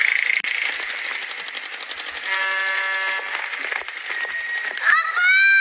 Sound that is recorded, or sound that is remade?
recorded